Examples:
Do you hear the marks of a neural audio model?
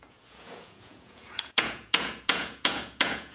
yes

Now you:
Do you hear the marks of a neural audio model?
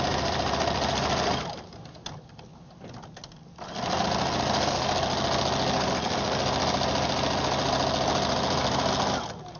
no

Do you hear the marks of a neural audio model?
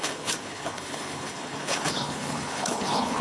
yes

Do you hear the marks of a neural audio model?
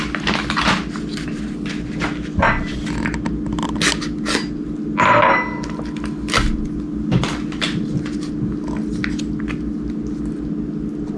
no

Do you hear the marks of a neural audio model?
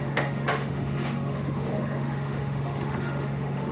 yes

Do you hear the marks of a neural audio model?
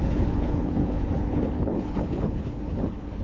yes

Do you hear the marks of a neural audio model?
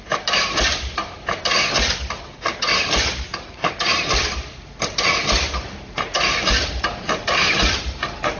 yes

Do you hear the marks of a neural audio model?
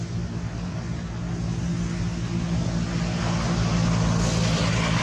no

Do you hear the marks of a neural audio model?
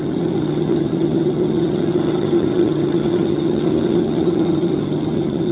yes